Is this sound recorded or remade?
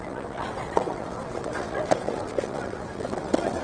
remade